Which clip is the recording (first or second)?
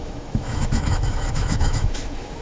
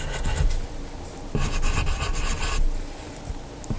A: second